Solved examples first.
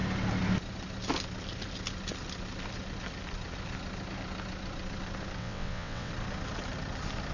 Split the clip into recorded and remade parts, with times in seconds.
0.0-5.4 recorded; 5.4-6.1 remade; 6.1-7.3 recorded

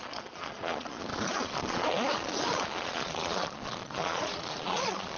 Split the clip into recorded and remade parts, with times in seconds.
0.0-5.2 remade

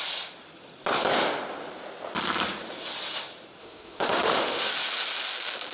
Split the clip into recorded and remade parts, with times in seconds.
0.0-3.6 recorded; 3.6-4.7 remade; 4.7-5.7 recorded